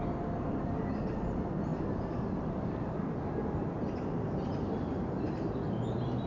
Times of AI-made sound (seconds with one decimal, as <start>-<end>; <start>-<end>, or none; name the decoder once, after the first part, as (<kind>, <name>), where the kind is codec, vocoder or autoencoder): none